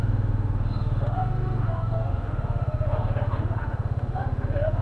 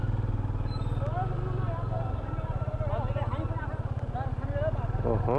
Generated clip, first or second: first